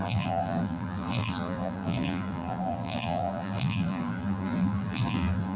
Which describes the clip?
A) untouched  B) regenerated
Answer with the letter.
B